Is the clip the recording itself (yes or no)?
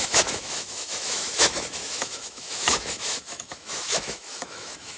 no